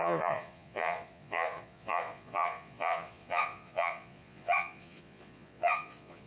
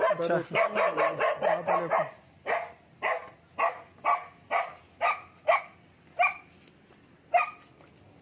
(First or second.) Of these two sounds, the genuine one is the second